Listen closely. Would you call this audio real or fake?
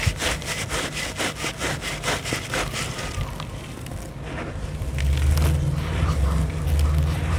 real